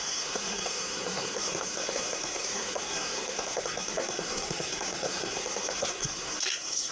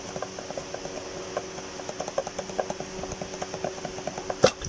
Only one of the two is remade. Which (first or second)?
first